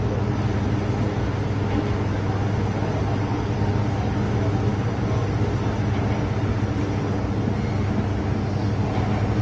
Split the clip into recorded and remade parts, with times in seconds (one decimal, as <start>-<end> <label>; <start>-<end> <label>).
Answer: 0.0-9.4 recorded